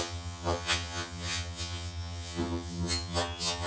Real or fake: fake